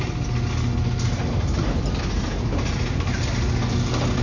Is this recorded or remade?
recorded